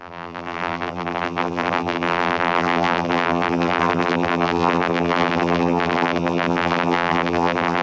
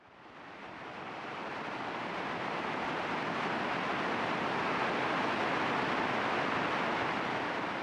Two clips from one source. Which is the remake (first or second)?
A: first